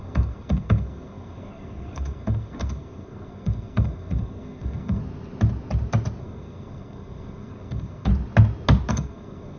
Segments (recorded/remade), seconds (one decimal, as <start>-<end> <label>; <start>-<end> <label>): 0.0-5.0 remade; 5.0-6.2 recorded; 6.2-8.1 remade; 8.1-8.9 recorded; 8.9-9.6 remade